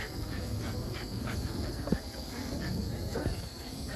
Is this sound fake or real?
fake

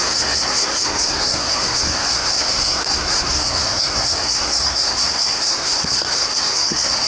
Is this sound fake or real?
fake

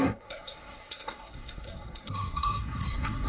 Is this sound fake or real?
fake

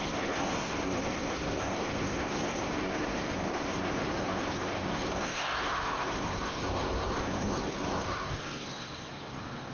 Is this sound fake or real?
fake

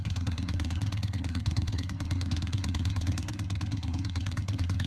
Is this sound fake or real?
fake